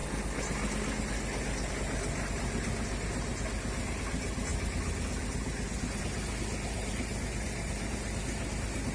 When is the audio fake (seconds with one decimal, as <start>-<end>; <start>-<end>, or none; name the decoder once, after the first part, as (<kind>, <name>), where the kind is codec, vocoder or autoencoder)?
none